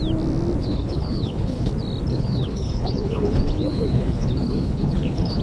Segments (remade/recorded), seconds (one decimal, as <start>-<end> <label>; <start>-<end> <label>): 0.0-0.6 recorded; 0.6-1.7 remade; 1.7-2.1 recorded; 2.1-5.4 remade

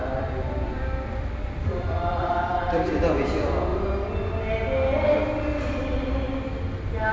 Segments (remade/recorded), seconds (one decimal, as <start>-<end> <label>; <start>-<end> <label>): 0.0-3.7 remade; 3.7-7.1 recorded

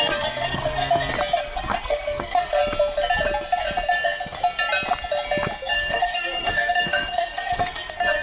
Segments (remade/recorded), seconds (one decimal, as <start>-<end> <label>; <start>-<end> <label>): 0.0-0.8 remade; 0.8-1.4 recorded; 1.4-2.6 remade; 2.6-5.7 recorded; 5.7-8.2 remade

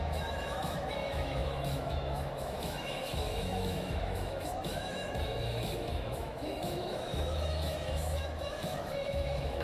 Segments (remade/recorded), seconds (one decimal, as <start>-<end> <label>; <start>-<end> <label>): 0.0-9.6 remade

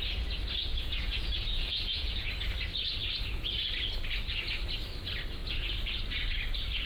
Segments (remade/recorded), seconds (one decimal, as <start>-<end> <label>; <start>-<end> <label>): 0.0-0.7 recorded; 0.7-2.3 remade; 2.3-6.9 recorded

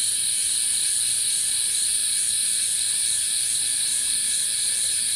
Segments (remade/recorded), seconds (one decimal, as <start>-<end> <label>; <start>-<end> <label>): 0.0-5.2 recorded

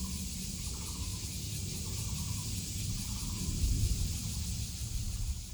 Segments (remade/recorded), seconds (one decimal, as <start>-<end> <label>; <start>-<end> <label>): 0.0-5.5 recorded